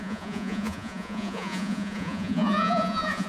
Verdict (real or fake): fake